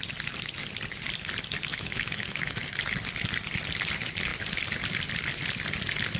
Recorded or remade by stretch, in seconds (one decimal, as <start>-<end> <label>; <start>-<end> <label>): 0.0-1.7 recorded; 1.7-2.8 remade; 2.8-6.2 recorded